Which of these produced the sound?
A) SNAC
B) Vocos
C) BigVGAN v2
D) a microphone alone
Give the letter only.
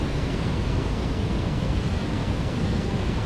A